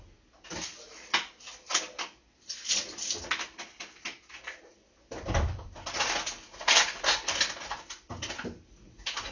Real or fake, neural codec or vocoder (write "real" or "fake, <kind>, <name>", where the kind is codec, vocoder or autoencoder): real